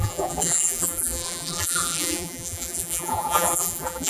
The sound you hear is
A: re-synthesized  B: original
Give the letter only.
A